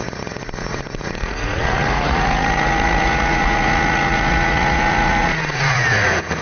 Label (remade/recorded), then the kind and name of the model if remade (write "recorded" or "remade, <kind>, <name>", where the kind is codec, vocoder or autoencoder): remade, vocoder, Vocos